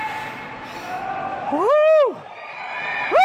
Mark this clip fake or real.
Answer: real